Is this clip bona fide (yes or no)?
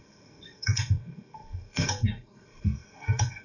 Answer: no